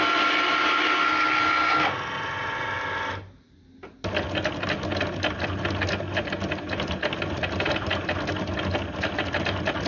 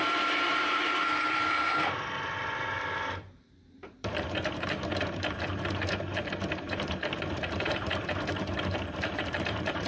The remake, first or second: second